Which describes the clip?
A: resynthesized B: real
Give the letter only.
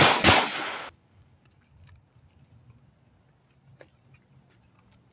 B